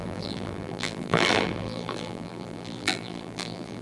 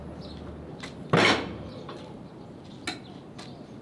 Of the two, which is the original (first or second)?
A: second